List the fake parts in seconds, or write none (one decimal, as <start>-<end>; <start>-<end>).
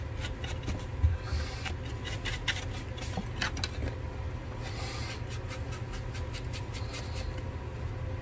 1.1-1.7